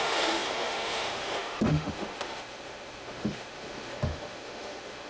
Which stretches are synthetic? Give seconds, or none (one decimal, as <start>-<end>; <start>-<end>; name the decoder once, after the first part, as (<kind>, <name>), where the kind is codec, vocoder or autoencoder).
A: 0.0-5.1 (autoencoder, DAC-VAE)